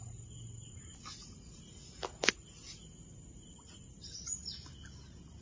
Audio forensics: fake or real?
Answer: real